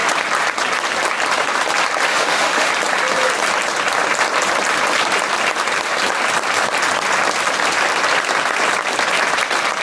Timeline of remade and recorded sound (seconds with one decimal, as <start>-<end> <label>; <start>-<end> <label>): 0.0-2.1 recorded; 2.1-2.7 remade; 2.7-9.8 recorded